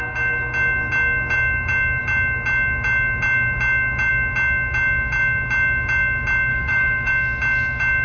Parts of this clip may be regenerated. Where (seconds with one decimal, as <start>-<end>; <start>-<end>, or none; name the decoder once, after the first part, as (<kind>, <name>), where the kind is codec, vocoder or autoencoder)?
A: 6.5-7.1 (autoencoder, DAC-VAE)

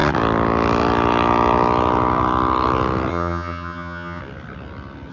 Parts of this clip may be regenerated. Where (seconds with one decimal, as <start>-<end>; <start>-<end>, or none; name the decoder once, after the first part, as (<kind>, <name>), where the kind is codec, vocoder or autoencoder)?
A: 3.1-4.2 (vocoder, HiFi-GAN)